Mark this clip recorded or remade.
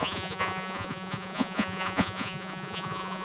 remade